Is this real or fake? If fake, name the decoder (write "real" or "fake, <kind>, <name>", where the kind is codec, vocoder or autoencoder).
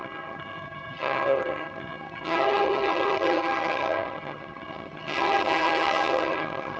fake, vocoder, HiFi-GAN